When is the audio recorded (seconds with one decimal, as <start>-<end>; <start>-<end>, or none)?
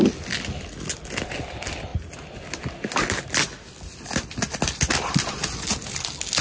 0.0-6.4